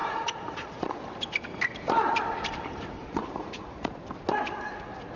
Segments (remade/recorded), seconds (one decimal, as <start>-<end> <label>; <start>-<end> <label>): 0.0-1.0 remade; 1.0-3.0 recorded; 3.0-4.0 remade; 4.0-5.2 recorded